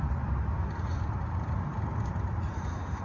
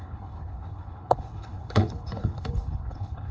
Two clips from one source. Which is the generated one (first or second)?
second